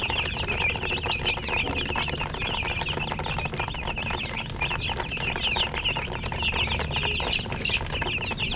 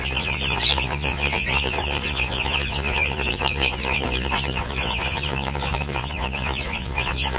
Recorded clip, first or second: first